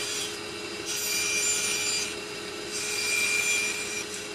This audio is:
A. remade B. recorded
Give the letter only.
B